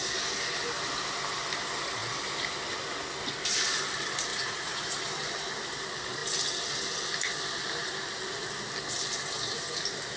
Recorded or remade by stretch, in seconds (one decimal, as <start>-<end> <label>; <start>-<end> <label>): 0.0-4.3 recorded; 4.3-5.0 remade; 5.0-10.2 recorded